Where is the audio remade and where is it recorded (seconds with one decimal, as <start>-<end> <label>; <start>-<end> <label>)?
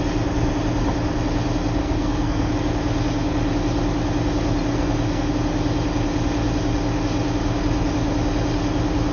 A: 0.0-1.8 recorded; 1.8-2.5 remade; 2.5-4.7 recorded; 4.7-5.3 remade; 5.3-9.1 recorded